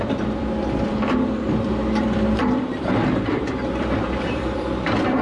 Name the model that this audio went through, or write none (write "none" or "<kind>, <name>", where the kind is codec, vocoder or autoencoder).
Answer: vocoder, BigVGAN v2